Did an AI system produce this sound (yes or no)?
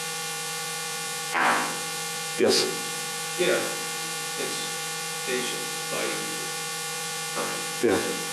yes